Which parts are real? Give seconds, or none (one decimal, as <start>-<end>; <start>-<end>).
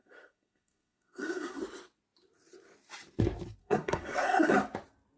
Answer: 1.6-3.6; 4.5-5.2